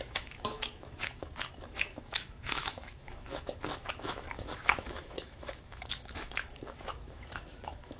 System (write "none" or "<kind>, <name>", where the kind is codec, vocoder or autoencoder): autoencoder, DAC-VAE